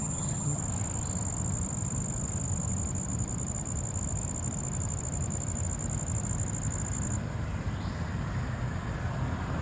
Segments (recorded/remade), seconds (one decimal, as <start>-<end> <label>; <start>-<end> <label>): 0.0-0.6 remade; 0.6-9.6 recorded